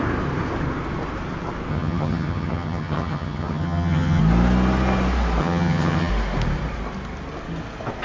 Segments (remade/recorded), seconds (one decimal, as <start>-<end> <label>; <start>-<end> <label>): 0.0-1.7 recorded; 1.7-4.2 remade; 4.2-5.4 recorded; 5.4-6.1 remade; 6.1-8.0 recorded